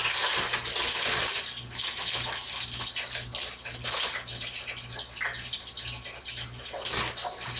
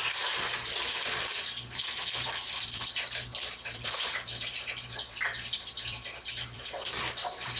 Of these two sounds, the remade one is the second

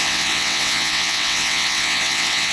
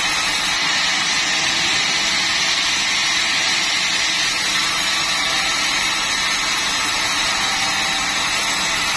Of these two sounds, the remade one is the first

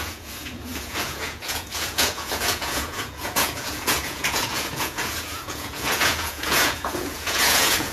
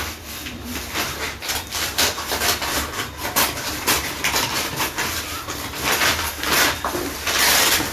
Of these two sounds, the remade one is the first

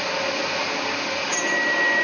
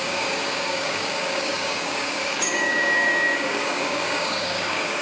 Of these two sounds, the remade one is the second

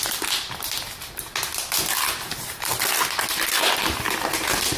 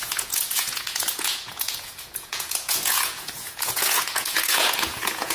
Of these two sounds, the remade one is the second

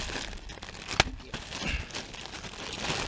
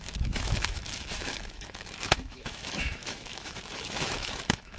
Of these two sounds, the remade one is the second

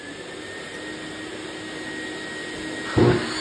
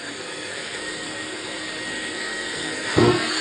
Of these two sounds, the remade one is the second